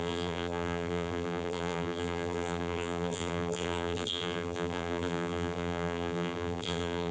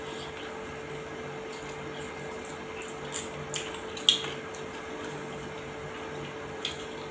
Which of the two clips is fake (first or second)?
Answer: first